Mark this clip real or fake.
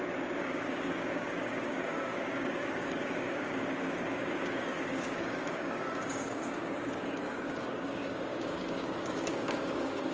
fake